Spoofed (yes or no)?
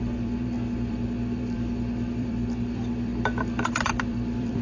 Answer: yes